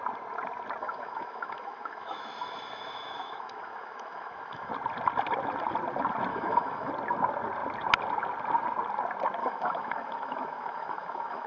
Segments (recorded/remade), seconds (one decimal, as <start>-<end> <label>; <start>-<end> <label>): 0.0-0.8 recorded; 0.8-4.7 remade; 4.7-6.3 recorded; 6.3-6.9 remade; 6.9-9.4 recorded; 9.4-11.5 remade